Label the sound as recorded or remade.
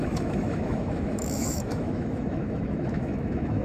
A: remade